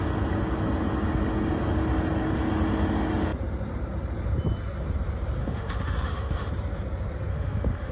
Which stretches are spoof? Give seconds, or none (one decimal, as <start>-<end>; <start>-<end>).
5.4-6.5; 7.3-7.9